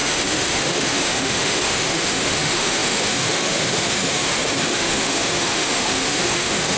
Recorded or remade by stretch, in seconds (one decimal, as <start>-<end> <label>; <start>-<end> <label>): 0.0-6.8 remade